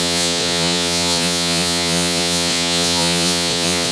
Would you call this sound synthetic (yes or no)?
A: yes